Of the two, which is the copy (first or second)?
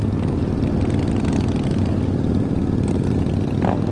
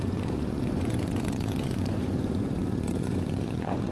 second